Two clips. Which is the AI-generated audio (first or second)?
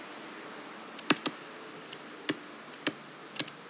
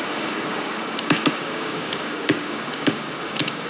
second